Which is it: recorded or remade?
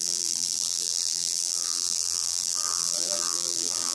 remade